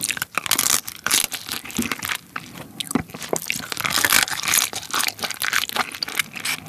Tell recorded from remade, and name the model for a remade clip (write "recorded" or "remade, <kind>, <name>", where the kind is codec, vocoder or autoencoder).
recorded